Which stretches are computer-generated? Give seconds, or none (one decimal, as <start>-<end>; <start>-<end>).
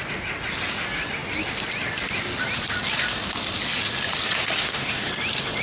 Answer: 4.6-5.1